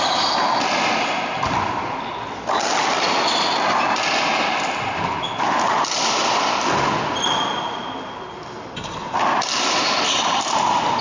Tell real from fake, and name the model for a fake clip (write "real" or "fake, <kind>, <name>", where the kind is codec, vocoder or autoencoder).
real